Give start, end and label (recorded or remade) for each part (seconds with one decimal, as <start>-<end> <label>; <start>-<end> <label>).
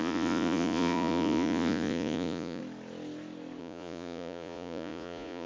0.0-2.6 remade; 2.6-3.6 recorded; 3.6-5.5 remade